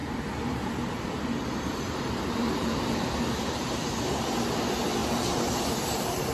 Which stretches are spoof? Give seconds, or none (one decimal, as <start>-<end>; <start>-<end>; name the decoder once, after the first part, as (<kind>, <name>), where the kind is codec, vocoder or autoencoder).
0.0-3.8 (vocoder, BigVGAN v2); 5.0-6.3